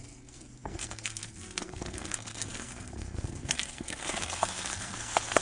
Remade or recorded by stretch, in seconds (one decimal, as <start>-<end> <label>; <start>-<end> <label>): 0.0-5.4 remade